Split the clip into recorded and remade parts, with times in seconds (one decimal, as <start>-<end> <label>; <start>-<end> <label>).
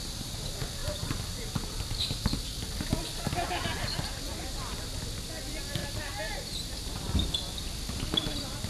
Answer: 0.0-0.8 recorded; 0.8-2.7 remade; 2.7-5.8 recorded; 5.8-6.3 remade; 6.3-8.7 recorded